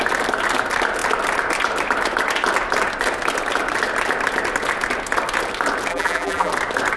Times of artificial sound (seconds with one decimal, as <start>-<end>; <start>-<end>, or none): 5.9-6.5